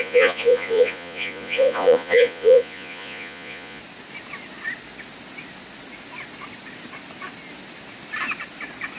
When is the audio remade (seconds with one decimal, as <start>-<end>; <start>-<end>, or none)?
0.0-3.8